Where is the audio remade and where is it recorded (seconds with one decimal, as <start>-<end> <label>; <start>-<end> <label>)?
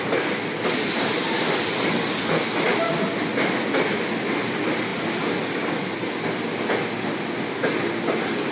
0.0-8.5 recorded